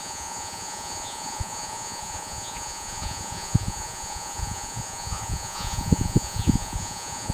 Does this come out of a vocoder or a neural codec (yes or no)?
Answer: yes